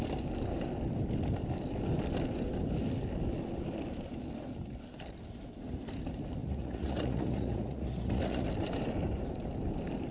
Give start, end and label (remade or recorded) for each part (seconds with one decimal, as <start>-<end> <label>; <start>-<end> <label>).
0.0-6.4 recorded; 6.4-8.4 remade; 8.4-10.1 recorded